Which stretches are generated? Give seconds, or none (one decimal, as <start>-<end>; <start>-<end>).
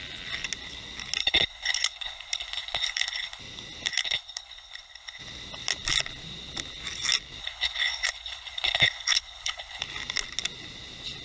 1.2-3.4; 3.9-5.2; 7.4-9.8